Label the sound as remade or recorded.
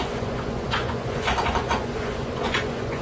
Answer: remade